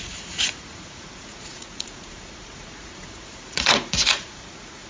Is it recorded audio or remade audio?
remade